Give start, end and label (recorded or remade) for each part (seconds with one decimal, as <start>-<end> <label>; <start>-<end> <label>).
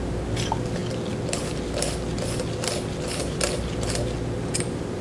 0.0-5.0 recorded